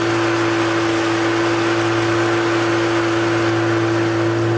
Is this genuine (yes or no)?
yes